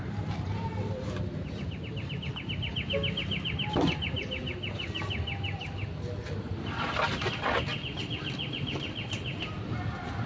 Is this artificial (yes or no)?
no